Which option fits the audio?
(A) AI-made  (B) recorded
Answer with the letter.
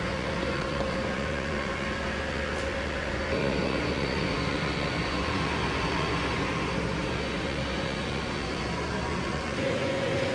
A